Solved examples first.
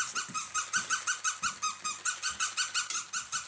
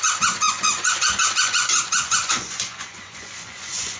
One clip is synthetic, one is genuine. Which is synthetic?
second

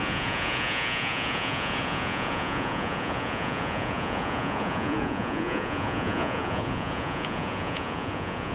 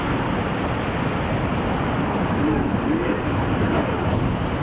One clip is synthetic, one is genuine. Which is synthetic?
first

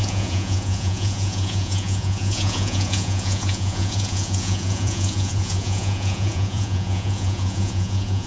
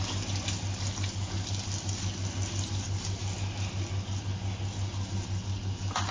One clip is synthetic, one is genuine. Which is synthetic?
first